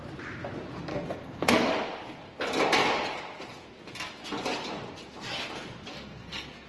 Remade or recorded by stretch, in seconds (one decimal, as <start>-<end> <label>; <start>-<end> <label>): 0.0-0.9 recorded; 0.9-1.7 remade; 1.7-5.9 recorded; 5.9-6.7 remade